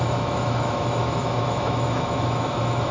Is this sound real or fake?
fake